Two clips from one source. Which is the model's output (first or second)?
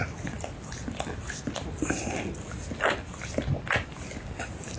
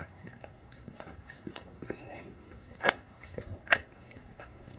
second